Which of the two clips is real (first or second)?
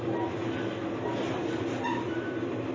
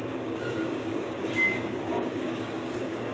first